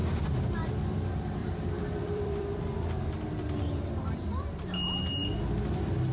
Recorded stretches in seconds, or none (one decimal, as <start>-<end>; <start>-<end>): 0.7-1.4; 2.7-6.1